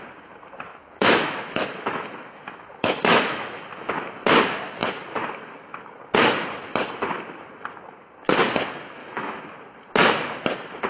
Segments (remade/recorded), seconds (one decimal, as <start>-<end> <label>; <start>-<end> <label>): 0.0-0.7 recorded; 0.7-3.6 remade; 3.6-9.0 recorded; 9.0-9.5 remade; 9.5-10.9 recorded